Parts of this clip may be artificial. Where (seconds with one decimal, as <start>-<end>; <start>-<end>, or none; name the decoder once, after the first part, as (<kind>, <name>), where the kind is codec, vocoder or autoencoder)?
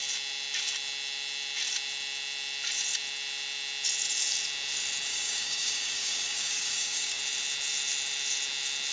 5.1-7.2 (codec, DAC)